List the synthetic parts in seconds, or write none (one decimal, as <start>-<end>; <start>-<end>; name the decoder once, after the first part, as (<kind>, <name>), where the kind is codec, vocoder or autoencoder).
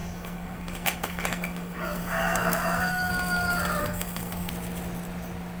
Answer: 0.0-3.1 (codec, SNAC); 3.8-4.5